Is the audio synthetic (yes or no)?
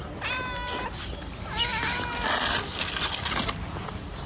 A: no